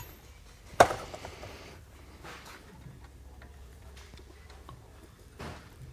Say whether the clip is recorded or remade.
remade